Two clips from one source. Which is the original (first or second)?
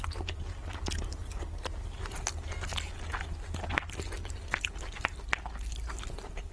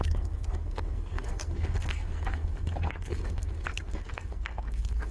first